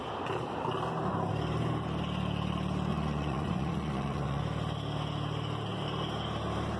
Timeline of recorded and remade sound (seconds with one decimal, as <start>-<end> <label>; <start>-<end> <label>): 0.0-2.9 recorded; 2.9-4.4 remade; 4.4-6.8 recorded